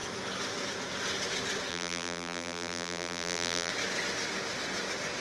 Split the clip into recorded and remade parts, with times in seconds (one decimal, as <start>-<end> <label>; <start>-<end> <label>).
0.0-1.7 recorded; 1.7-3.7 remade; 3.7-5.2 recorded

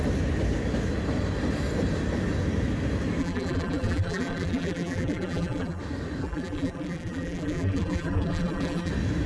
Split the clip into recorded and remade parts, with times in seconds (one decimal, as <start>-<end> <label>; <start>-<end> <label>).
0.0-3.2 recorded; 3.2-5.8 remade; 5.8-6.2 recorded; 6.2-8.9 remade; 8.9-9.3 recorded